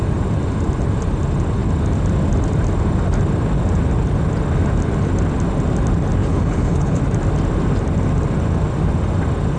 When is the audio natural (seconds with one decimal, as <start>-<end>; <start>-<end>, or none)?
0.0-6.2; 7.0-9.6